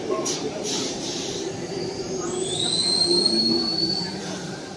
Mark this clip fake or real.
fake